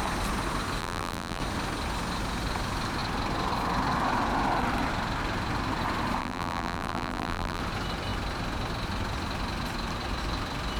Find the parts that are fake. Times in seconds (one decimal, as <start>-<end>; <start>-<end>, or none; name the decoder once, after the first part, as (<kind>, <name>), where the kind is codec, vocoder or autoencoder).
0.8-1.4 (vocoder, BigVGAN v2); 6.2-7.6